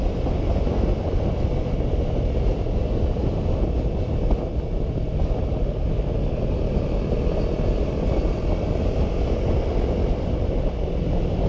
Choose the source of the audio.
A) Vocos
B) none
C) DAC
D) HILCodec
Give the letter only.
B